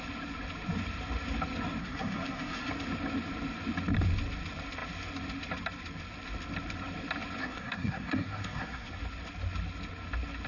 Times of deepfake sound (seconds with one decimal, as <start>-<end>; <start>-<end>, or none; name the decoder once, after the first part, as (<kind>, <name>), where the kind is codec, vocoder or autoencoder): 1.8-2.7 (codec, SNAC); 7.4-9.0